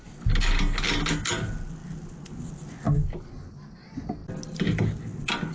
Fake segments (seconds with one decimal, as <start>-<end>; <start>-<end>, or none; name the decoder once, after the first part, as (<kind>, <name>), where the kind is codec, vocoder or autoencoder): none